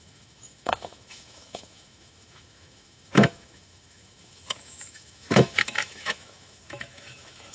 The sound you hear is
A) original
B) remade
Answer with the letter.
B